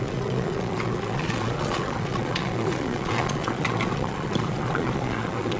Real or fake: fake